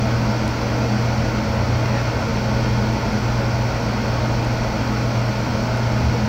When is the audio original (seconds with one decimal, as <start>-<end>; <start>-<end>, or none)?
0.0-6.3